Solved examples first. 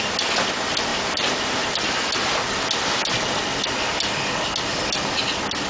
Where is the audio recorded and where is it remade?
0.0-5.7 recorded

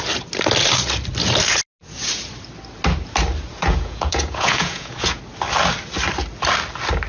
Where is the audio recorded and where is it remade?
0.0-3.5 recorded; 3.5-5.2 remade; 5.2-7.1 recorded

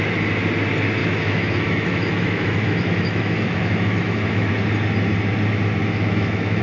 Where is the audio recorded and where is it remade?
0.0-1.0 recorded; 1.0-4.5 remade; 4.5-5.8 recorded; 5.8-6.6 remade

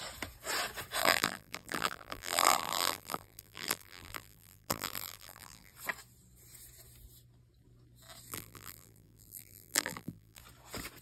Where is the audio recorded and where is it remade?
0.0-1.0 recorded; 1.0-5.7 remade; 5.7-8.3 recorded; 8.3-10.4 remade; 10.4-11.0 recorded

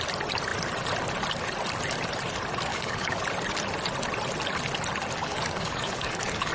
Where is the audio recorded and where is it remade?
0.0-2.7 recorded; 2.7-3.2 remade; 3.2-5.2 recorded; 5.2-6.5 remade

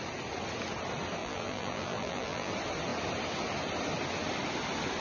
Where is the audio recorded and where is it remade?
0.0-1.2 recorded; 1.2-2.5 remade; 2.5-5.0 recorded

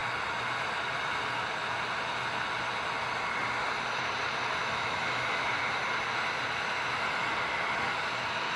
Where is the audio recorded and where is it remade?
0.0-4.6 recorded; 4.6-5.5 remade; 5.5-8.6 recorded